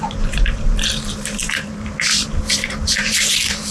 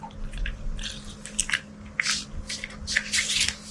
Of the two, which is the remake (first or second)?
first